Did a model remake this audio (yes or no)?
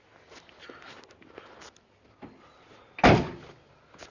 no